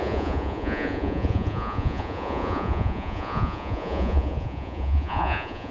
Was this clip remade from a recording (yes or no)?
yes